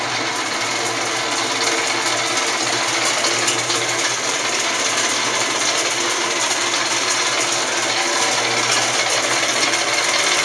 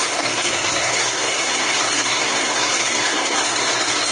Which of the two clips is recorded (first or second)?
first